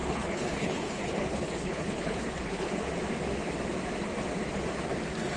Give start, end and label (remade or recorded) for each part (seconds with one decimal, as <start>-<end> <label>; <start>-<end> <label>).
0.0-2.7 remade; 2.7-5.4 recorded